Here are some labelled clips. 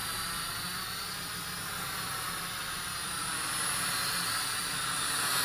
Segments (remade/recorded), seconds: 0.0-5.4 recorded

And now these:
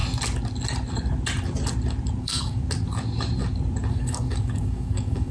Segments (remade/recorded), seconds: 0.0-2.2 recorded; 2.2-2.6 remade; 2.6-3.9 recorded; 3.9-5.3 remade

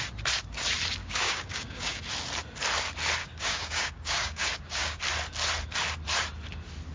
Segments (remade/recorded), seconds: 0.0-1.0 recorded; 1.0-2.0 remade; 2.0-3.2 recorded; 3.2-5.0 remade; 5.0-6.9 recorded

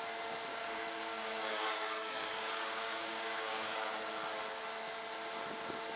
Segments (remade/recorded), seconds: 0.0-0.5 recorded; 0.5-4.1 remade; 4.1-6.0 recorded

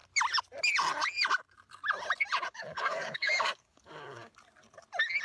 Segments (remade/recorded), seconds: 0.0-2.5 recorded; 2.5-4.3 remade; 4.3-5.2 recorded

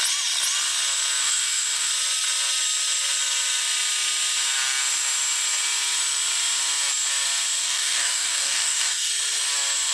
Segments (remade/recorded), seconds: 0.0-1.2 recorded; 1.2-1.9 remade; 1.9-7.6 recorded; 7.6-9.1 remade; 9.1-9.9 recorded

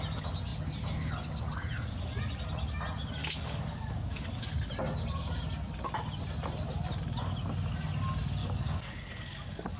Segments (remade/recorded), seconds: 0.0-3.2 recorded; 3.2-4.4 remade; 4.4-8.4 recorded; 8.4-9.8 remade